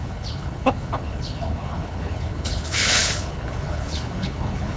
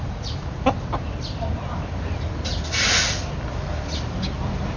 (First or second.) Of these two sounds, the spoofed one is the first